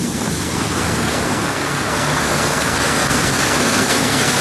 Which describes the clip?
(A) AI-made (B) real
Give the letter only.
A